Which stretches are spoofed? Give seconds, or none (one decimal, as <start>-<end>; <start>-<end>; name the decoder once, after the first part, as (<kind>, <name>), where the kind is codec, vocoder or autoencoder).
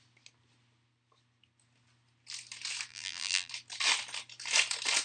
2.9-3.5 (vocoder, BigVGAN v2)